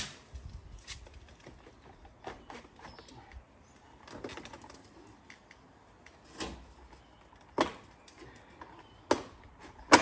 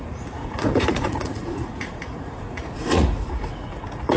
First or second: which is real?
first